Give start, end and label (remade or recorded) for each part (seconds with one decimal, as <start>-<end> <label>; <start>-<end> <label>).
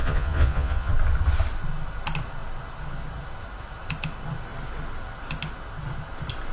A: 0.0-0.9 remade; 0.9-6.5 recorded